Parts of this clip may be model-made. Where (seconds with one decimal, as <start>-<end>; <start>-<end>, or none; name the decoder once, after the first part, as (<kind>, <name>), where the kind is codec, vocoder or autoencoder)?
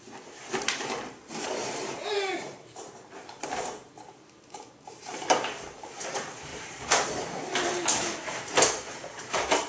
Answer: 0.0-9.7 (vocoder, BigVGAN v2)